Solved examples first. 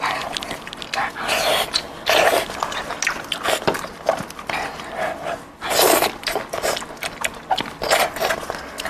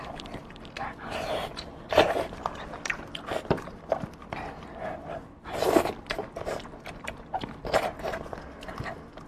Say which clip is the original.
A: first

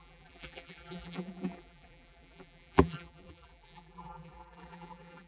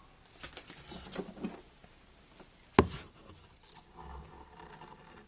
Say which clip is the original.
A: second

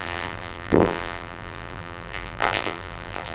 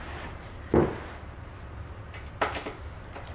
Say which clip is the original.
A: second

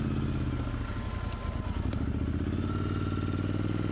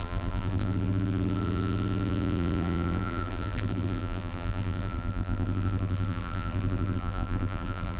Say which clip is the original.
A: first